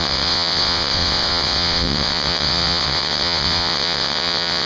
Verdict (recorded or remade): remade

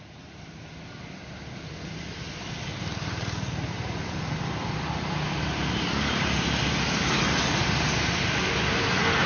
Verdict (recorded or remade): recorded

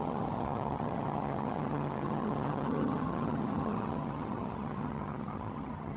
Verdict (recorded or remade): remade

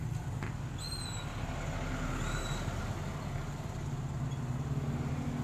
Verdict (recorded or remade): recorded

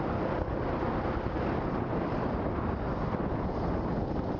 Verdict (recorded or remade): recorded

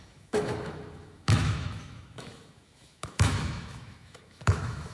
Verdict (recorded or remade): remade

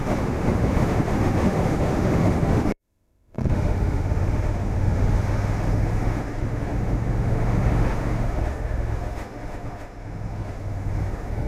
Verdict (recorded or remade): remade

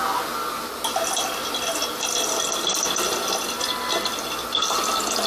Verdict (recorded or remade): recorded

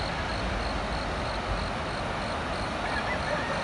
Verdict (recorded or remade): recorded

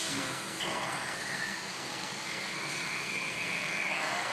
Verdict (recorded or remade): remade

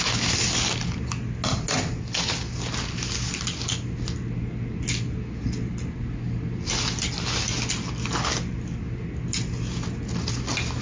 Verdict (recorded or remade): recorded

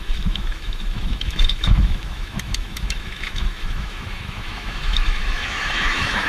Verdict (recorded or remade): remade